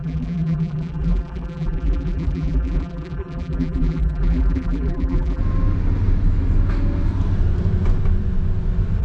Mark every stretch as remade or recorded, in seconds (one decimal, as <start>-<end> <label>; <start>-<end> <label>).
0.0-5.4 remade; 5.4-9.0 recorded

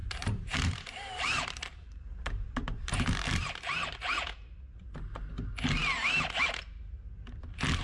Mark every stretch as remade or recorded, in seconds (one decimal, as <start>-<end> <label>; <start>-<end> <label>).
0.0-4.6 remade; 4.6-7.8 recorded

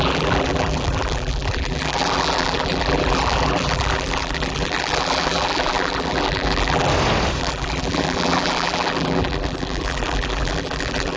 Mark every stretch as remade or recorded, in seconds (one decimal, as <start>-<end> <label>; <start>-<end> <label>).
0.0-6.9 remade; 6.9-7.4 recorded; 7.4-11.2 remade

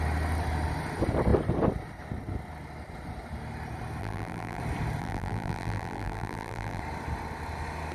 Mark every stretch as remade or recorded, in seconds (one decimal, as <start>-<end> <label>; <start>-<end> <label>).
0.0-4.0 recorded; 4.0-4.6 remade; 4.6-5.0 recorded; 5.0-6.8 remade; 6.8-7.9 recorded

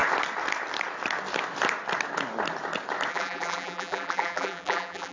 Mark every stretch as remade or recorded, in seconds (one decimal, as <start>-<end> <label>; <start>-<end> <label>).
0.0-3.1 recorded; 3.1-5.1 remade

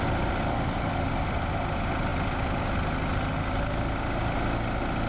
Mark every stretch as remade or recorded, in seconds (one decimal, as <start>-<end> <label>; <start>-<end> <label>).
0.0-5.1 recorded

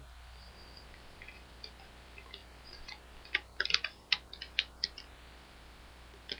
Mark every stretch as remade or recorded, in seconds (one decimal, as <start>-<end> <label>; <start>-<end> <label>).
0.0-6.4 recorded